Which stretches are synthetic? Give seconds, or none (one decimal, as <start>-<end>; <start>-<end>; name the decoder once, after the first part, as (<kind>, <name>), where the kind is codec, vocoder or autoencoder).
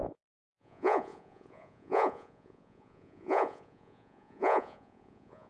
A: 0.0-5.5 (vocoder, Vocos)